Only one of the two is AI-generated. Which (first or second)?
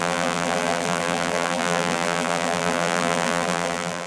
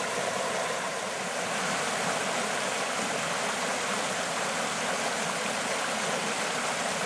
first